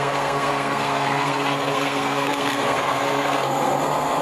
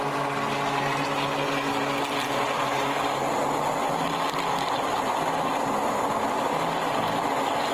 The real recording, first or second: second